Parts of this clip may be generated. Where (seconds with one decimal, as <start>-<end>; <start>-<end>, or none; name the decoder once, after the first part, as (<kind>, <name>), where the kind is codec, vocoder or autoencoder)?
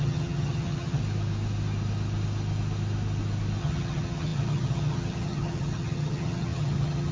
0.0-1.0 (vocoder, HiFi-GAN); 3.6-7.1